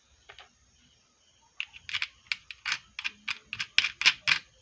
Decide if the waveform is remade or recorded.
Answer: recorded